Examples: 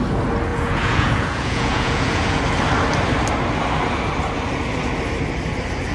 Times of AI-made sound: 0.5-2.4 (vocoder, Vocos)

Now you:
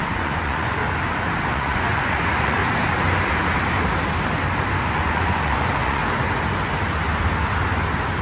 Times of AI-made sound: 0.0-0.8 (vocoder, Vocos); 1.4-2.6; 4.9-6.0

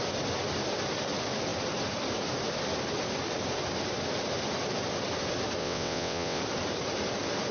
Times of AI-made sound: 5.6-6.4 (vocoder, WaveNeXt)

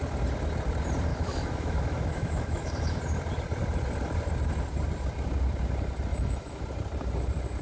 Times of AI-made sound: 1.1-3.0 (autoencoder, DAC-VAE); 6.1-6.6

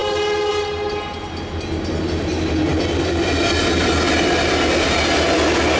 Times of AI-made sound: none

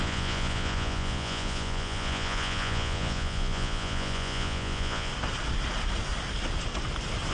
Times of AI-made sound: 0.0-5.1 (vocoder, Vocos)

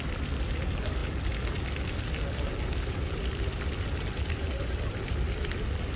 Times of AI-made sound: none

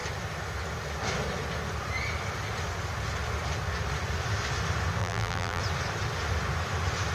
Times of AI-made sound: 5.0-5.6 (vocoder, BigVGAN v2)